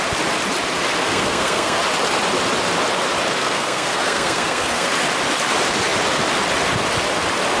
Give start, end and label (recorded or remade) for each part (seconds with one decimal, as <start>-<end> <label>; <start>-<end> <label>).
0.0-1.0 recorded; 1.0-1.8 remade; 1.8-3.4 recorded; 3.4-4.9 remade; 4.9-7.6 recorded